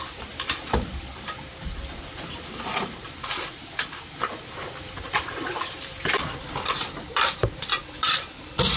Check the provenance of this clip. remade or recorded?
remade